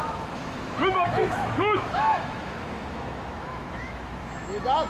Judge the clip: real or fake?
fake